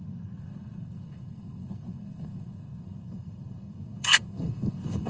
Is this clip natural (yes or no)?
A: no